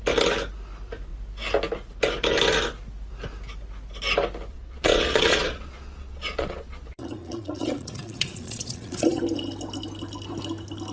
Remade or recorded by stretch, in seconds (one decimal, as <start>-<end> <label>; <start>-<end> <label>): 0.0-4.5 recorded; 4.5-9.2 remade; 9.2-10.9 recorded